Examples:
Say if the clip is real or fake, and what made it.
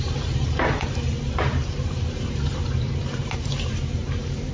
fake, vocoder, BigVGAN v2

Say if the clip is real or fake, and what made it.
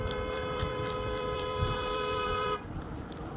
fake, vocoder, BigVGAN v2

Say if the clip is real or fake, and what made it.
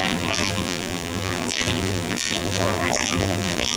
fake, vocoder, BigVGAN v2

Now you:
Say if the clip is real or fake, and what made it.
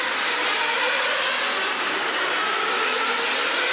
real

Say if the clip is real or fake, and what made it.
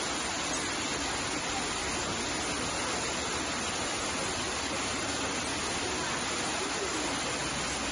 real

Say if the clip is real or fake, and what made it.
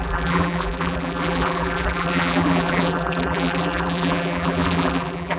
fake, vocoder, BigVGAN v2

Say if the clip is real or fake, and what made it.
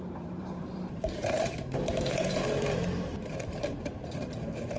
fake, vocoder, BigVGAN v2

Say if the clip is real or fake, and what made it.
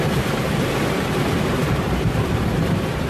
fake, vocoder, BigVGAN v2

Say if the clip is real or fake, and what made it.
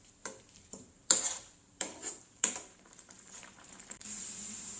fake, vocoder, BigVGAN v2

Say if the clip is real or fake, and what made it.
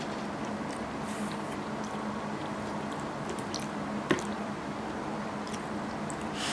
real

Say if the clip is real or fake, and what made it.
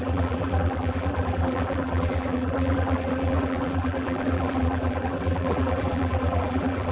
fake, vocoder, BigVGAN v2